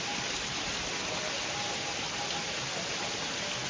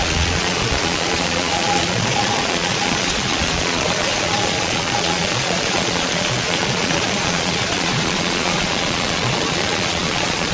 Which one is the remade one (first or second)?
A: second